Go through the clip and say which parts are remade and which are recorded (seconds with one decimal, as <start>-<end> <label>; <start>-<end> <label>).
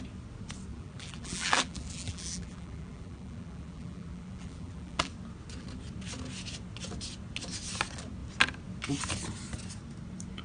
0.0-0.7 recorded; 0.7-5.1 remade; 5.1-10.4 recorded